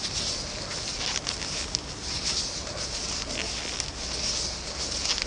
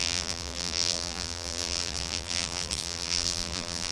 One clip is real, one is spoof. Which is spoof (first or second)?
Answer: second